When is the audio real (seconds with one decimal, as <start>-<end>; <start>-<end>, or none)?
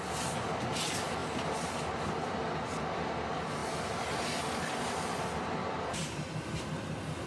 0.0-5.6; 6.3-7.3